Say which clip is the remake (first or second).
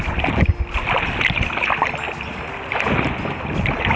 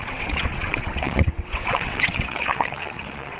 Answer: second